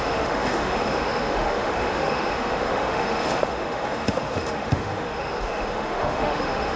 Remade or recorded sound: remade